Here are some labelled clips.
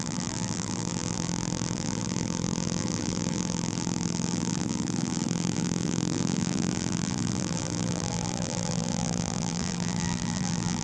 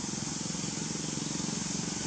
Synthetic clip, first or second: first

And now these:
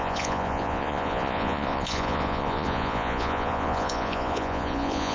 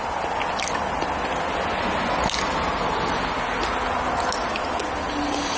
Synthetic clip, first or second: first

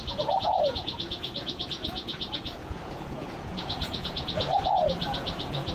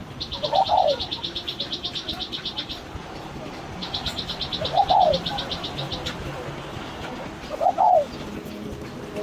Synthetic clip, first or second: first